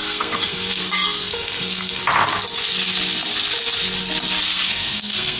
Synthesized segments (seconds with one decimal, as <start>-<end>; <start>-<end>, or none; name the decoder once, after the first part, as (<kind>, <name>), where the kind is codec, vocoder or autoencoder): 0.0-2.0 (codec, SNAC); 4.4-5.4